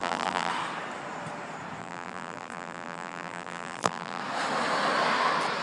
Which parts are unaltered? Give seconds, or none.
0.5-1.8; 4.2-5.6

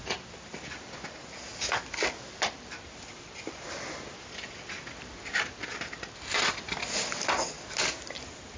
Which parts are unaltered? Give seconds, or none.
0.0-8.6

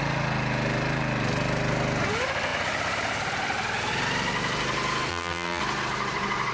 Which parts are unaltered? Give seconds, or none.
0.0-5.1; 5.6-6.5

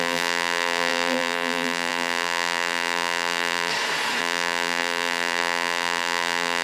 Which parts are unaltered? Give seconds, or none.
3.7-4.2

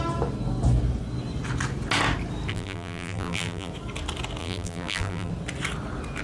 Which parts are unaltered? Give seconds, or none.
0.0-2.5; 3.7-4.4; 5.3-6.2

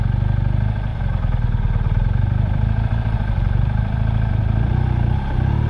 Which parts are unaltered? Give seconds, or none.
0.0-0.9; 4.3-5.7

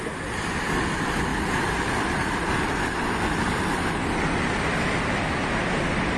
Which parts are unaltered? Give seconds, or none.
0.0-1.3; 5.0-6.2

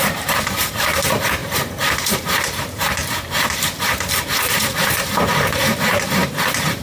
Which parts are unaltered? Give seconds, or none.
3.0-3.8